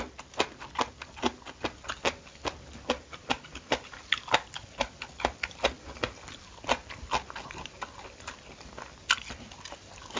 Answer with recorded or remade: recorded